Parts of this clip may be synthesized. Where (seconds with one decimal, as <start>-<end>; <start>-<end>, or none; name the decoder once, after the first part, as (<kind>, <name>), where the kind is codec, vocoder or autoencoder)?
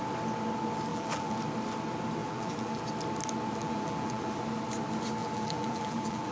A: 0.9-1.4 (vocoder, BigVGAN v2); 2.2-2.8; 3.6-4.4; 5.2-6.3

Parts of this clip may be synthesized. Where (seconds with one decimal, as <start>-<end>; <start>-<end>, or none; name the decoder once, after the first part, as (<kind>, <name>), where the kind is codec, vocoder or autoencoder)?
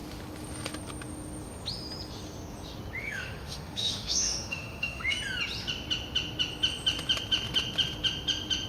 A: 3.0-5.2 (autoencoder, DAC-VAE)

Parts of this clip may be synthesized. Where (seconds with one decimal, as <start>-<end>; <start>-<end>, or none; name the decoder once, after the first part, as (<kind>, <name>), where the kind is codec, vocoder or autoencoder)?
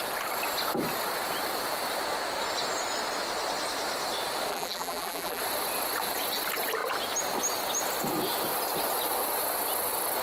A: 4.5-5.4 (vocoder, BigVGAN v2)